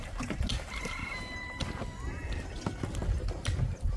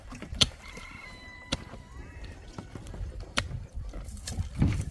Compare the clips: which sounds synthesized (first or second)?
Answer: second